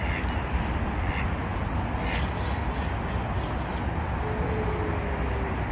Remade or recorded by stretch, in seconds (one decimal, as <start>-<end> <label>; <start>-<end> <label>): 0.0-5.7 recorded